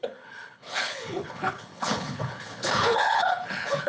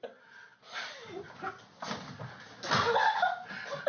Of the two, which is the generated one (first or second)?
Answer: first